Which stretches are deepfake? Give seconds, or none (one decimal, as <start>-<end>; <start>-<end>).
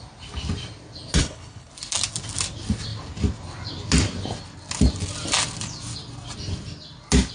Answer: 1.2-1.7